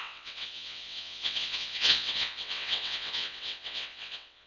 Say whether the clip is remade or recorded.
remade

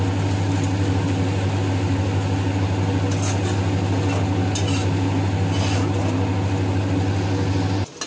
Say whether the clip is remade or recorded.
recorded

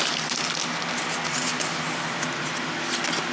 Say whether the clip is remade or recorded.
recorded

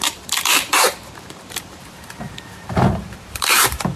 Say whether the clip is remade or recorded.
remade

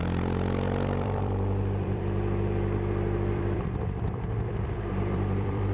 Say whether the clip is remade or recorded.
remade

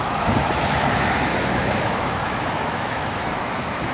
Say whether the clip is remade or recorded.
remade